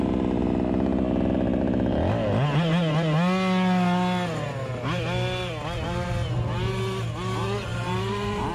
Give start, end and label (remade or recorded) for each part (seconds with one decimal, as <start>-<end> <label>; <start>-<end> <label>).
0.0-7.7 recorded; 7.7-8.5 remade